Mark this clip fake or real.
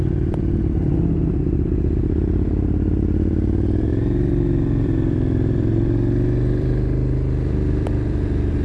fake